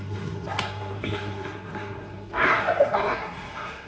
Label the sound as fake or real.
fake